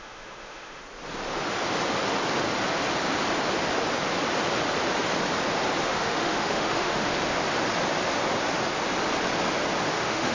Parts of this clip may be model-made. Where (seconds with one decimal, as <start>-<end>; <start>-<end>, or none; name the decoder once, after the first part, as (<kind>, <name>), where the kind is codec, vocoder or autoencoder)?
0.0-0.8 (autoencoder, DAC-VAE); 5.8-7.1; 9.9-10.3